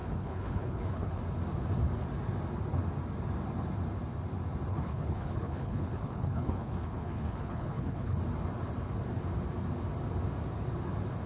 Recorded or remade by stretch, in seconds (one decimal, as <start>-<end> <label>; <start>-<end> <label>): 0.0-1.2 remade; 1.2-4.7 recorded; 4.7-8.2 remade; 8.2-11.3 recorded